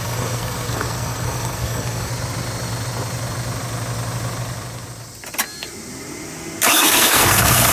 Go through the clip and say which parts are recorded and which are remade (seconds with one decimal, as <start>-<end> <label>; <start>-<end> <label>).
0.0-2.1 remade; 2.1-6.7 recorded; 6.7-7.7 remade